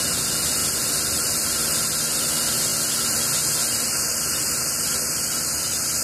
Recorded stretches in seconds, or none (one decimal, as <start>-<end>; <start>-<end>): 0.0-6.0